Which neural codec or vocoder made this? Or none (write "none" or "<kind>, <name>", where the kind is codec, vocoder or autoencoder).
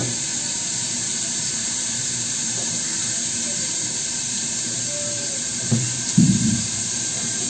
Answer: vocoder, BigVGAN v2